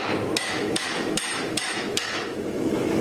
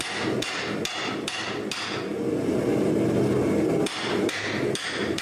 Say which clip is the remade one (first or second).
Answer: first